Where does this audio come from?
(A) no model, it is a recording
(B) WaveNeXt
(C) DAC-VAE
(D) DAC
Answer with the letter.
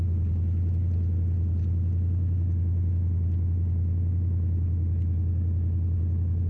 A